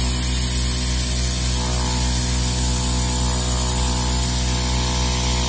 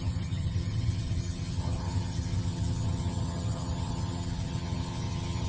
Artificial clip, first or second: second